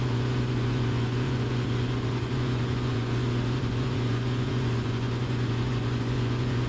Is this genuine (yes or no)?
no